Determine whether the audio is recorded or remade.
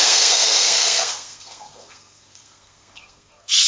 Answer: remade